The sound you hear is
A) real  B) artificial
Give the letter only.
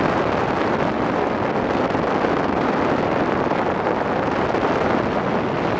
A